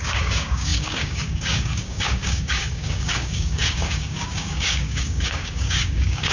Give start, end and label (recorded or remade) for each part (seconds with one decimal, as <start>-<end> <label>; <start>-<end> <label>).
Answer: 0.0-6.3 remade